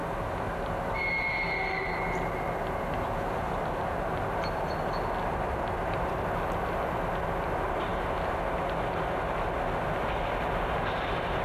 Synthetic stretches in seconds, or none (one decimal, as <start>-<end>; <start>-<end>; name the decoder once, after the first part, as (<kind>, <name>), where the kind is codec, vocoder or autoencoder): none